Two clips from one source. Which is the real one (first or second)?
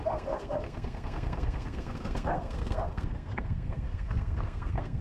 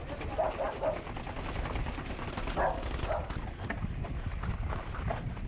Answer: second